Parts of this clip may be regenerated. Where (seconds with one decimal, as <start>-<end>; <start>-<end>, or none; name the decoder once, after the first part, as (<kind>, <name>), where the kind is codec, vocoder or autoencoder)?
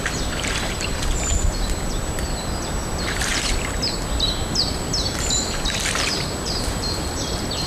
0.0-3.3 (vocoder, BigVGAN v2); 4.0-7.7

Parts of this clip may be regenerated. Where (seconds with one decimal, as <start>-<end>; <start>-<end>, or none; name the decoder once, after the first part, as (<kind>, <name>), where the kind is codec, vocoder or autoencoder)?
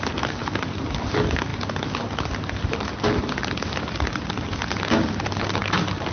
0.4-1.1 (vocoder, BigVGAN v2)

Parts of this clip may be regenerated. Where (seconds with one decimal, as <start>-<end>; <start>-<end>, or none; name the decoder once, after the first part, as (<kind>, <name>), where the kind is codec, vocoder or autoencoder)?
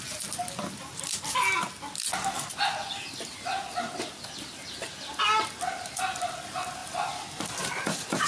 none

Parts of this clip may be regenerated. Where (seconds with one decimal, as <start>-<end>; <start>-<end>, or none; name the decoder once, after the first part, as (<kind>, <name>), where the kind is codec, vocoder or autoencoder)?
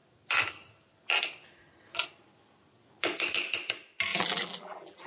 4.1-5.1 (vocoder, BigVGAN v2)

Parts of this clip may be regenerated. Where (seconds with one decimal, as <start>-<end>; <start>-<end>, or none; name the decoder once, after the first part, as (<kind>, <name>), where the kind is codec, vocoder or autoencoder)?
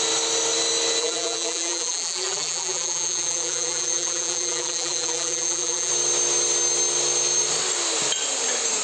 1.0-5.9 (vocoder, BigVGAN v2)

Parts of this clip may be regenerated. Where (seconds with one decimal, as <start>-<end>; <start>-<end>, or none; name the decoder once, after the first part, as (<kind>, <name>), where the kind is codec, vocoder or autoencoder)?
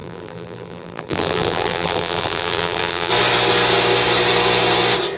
0.0-3.1 (vocoder, BigVGAN v2)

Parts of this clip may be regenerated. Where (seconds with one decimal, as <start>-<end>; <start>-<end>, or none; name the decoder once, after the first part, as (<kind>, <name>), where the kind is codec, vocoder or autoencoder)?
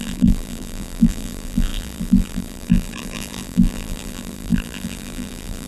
0.0-5.7 (vocoder, BigVGAN v2)